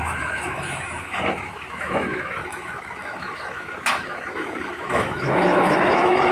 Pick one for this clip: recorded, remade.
remade